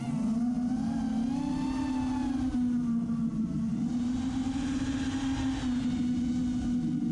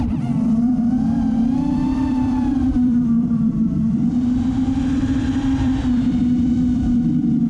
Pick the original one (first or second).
first